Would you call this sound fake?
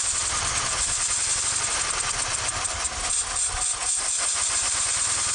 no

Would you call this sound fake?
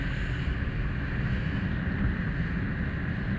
no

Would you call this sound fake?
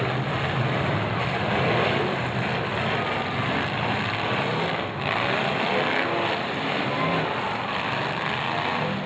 no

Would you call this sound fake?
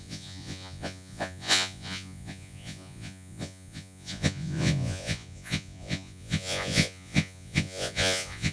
yes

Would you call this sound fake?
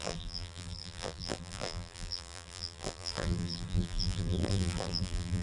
yes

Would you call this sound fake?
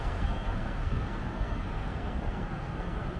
yes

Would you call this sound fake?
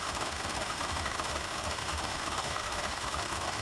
yes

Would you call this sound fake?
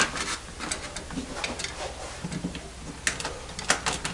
no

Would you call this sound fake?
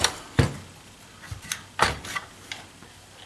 no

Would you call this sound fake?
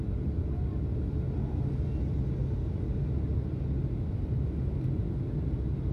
no